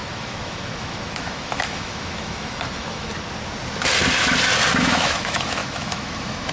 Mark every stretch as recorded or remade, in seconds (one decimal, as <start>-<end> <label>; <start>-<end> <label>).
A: 0.0-3.1 remade; 3.1-4.8 recorded; 4.8-6.5 remade